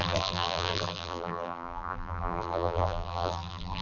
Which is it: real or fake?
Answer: fake